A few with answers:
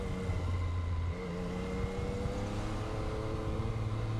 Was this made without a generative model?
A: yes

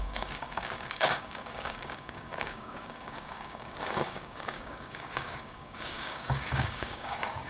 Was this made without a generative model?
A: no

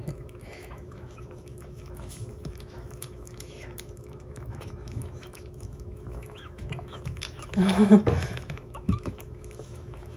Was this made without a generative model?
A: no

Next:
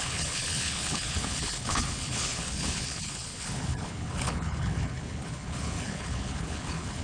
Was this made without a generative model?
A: no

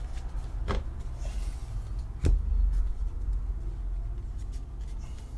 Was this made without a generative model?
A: yes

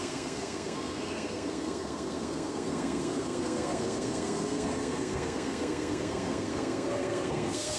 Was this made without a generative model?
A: no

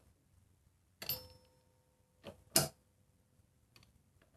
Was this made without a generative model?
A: yes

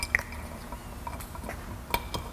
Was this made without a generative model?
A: yes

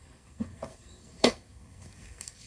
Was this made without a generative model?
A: no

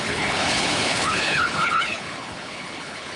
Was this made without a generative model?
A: no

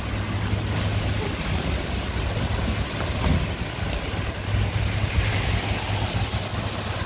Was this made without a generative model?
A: yes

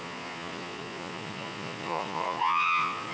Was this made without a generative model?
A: no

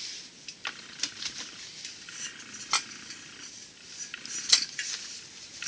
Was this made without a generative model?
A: yes